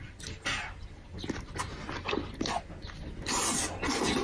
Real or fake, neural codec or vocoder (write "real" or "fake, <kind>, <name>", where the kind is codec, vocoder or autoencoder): real